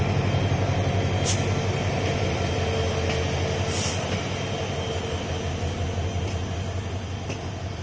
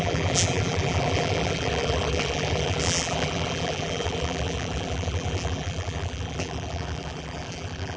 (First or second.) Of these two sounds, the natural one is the first